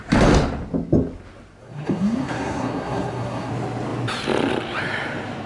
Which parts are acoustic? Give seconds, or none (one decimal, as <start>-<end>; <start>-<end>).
0.0-1.6; 3.5-5.5